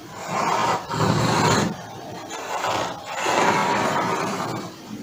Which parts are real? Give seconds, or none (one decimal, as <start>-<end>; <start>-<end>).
0.0-0.6; 2.7-3.6; 4.6-5.0